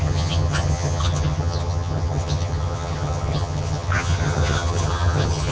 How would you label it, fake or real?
fake